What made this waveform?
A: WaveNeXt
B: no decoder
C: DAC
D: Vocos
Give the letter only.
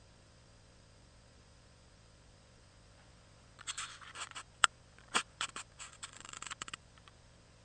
D